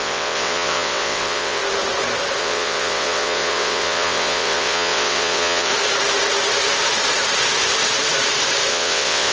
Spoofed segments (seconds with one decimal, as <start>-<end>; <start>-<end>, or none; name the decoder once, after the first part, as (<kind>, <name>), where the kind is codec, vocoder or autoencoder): 0.0-1.6 (vocoder, WaveNeXt); 2.4-5.7; 8.7-9.3